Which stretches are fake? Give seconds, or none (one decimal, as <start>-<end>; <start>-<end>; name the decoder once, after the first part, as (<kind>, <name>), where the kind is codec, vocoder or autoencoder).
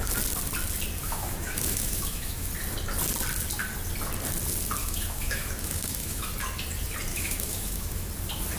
1.0-2.5 (autoencoder, DAC-VAE); 4.8-6.3; 7.1-8.1